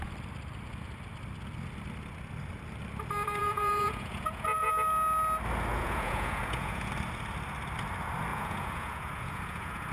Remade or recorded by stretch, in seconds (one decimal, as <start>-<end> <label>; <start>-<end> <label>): 0.0-3.4 recorded; 3.4-4.7 remade; 4.7-5.7 recorded; 5.7-6.9 remade; 6.9-8.3 recorded; 8.3-9.9 remade